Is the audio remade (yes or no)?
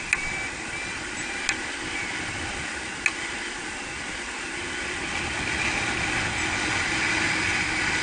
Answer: no